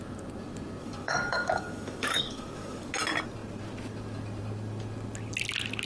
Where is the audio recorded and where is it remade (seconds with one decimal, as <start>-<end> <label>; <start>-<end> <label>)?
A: 0.0-0.8 recorded; 0.8-2.9 remade; 2.9-5.8 recorded